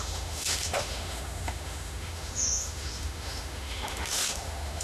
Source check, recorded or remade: remade